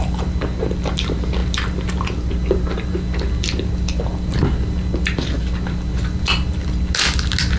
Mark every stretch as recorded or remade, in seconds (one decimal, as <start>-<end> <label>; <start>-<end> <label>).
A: 0.0-7.6 recorded